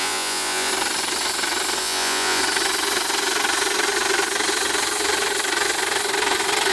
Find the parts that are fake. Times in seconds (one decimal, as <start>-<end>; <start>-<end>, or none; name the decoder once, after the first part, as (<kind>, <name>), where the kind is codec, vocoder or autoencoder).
0.0-0.7 (vocoder, Vocos); 1.8-2.4